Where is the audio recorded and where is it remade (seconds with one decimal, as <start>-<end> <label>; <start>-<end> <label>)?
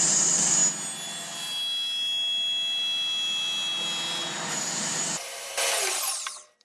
0.0-0.6 remade; 0.6-4.5 recorded; 4.5-5.5 remade; 5.5-6.6 recorded